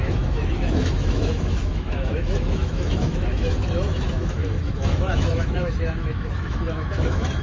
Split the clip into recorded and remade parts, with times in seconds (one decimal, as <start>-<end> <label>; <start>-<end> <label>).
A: 0.0-7.4 remade